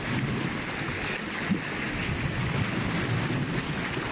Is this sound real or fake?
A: real